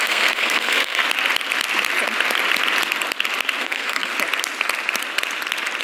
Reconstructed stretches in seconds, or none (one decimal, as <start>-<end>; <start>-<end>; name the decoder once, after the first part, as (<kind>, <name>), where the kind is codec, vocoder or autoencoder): 0.0-1.0 (codec, SNAC); 3.6-4.1